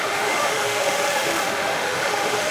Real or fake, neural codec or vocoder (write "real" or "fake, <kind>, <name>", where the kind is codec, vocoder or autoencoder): fake, autoencoder, DAC-VAE